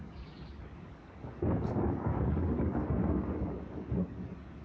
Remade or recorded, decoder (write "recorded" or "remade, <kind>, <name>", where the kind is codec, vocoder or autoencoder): remade, codec, DAC